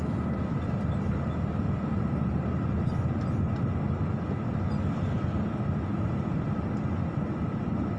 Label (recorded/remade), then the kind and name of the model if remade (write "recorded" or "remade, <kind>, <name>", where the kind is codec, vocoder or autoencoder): recorded